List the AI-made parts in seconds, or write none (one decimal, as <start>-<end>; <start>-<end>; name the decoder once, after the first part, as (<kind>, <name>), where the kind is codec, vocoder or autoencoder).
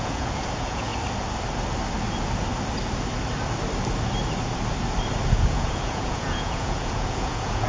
0.0-0.9 (vocoder, Vocos); 5.3-7.7